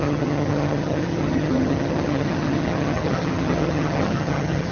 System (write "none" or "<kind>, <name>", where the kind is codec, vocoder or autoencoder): vocoder, HiFi-GAN